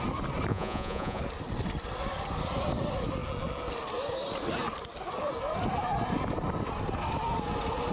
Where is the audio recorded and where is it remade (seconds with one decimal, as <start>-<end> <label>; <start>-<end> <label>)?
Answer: 0.0-0.5 recorded; 0.5-1.2 remade; 1.2-7.9 recorded